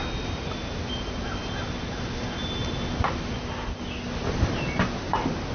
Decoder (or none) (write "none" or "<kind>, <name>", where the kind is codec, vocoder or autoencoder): none